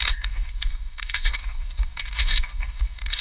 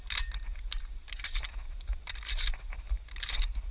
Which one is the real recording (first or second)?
second